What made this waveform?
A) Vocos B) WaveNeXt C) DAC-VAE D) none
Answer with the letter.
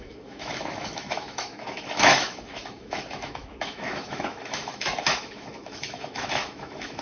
C